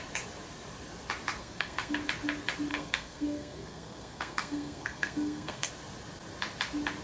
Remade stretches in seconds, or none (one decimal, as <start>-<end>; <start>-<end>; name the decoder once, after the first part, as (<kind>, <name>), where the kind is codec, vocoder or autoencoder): 1.4-2.0 (codec, SNAC); 2.7-5.7